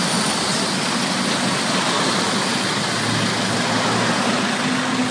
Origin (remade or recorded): recorded